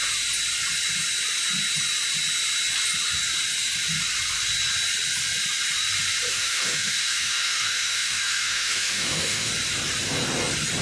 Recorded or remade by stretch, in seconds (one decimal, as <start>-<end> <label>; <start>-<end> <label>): 0.0-6.3 recorded; 6.3-9.5 remade; 9.5-10.8 recorded

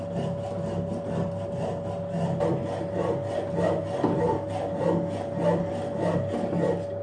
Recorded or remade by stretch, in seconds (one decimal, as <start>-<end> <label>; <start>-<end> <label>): 0.0-7.0 recorded

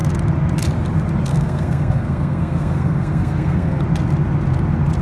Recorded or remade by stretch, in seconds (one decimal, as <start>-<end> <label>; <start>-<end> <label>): 0.0-1.3 recorded; 1.3-3.8 remade; 3.8-5.0 recorded

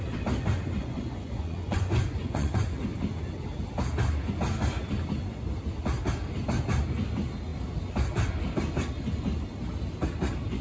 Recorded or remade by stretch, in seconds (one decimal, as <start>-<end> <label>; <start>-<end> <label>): 0.0-0.8 recorded; 0.8-2.8 remade; 2.8-10.6 recorded

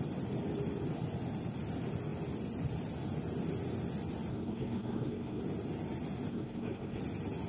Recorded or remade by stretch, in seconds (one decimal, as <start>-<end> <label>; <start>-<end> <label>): 0.0-4.3 recorded; 4.3-5.4 remade; 5.4-6.3 recorded; 6.3-7.0 remade; 7.0-7.5 recorded

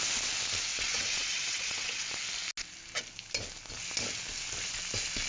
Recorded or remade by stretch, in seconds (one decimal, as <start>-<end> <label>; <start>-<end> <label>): 0.0-0.7 recorded; 0.7-2.1 remade; 2.1-5.3 recorded